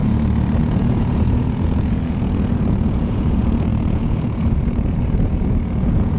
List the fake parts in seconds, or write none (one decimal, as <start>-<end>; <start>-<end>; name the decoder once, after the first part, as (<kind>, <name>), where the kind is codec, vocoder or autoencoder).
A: 0.6-6.2 (vocoder, Vocos)